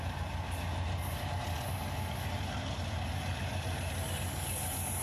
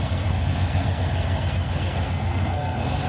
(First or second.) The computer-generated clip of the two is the second